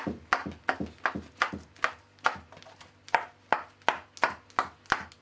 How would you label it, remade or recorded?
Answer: recorded